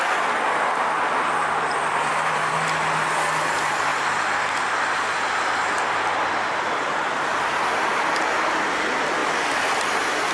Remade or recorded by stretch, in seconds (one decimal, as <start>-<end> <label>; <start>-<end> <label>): 0.0-10.3 recorded